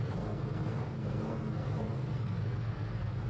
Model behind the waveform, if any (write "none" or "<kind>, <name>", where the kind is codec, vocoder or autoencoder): codec, SNAC